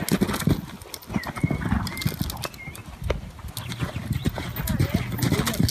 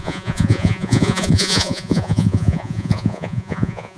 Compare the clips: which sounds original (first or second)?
first